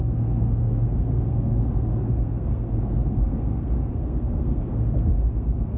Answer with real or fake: fake